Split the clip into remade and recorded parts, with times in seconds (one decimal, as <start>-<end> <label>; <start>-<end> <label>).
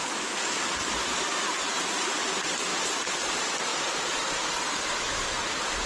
0.0-2.1 remade; 2.1-3.7 recorded; 3.7-4.3 remade; 4.3-5.9 recorded